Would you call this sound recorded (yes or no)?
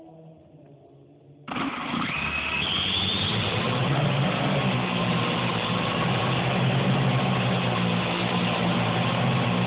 yes